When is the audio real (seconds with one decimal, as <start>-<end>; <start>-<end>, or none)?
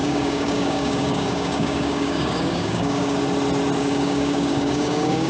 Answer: 3.2-3.8